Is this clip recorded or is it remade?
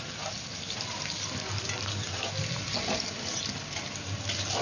recorded